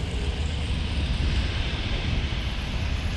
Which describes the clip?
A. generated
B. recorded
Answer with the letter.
B